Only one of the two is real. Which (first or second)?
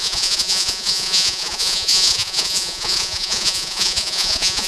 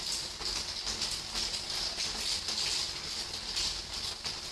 second